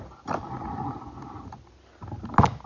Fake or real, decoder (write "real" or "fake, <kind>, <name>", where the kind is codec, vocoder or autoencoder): real